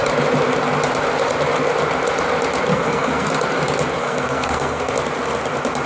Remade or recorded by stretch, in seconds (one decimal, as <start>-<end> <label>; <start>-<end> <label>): 0.0-2.7 recorded; 2.7-3.3 remade; 3.3-4.0 recorded; 4.0-4.9 remade; 4.9-5.9 recorded